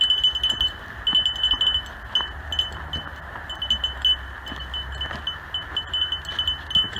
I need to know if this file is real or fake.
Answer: real